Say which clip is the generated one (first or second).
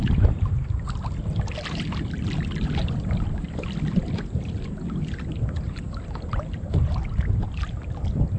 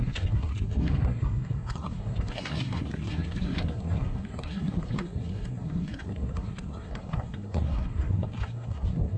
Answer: second